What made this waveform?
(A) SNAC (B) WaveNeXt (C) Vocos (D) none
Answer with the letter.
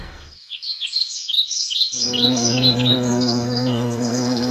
A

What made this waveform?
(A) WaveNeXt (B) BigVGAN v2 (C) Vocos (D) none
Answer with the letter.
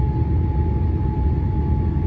D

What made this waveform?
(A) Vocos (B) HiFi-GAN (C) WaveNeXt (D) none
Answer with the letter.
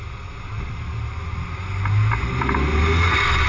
D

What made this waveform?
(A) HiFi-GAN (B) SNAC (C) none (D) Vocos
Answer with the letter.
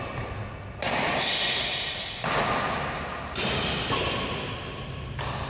C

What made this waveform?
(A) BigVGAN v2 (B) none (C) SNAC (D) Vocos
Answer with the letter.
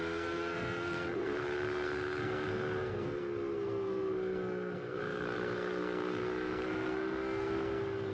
C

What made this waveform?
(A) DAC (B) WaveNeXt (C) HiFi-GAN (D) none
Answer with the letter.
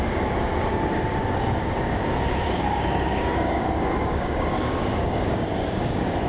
A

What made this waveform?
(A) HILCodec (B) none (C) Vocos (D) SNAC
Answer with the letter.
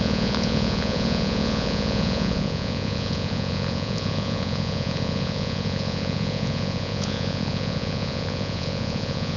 C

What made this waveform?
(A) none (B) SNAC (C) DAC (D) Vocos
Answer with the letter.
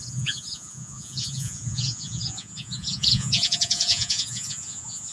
D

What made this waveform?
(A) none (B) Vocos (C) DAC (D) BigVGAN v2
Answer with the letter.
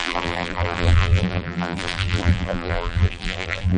D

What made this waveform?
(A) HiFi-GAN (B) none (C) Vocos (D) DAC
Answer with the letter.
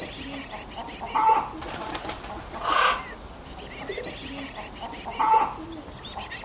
B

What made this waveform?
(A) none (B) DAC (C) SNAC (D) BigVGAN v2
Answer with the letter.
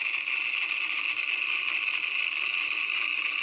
A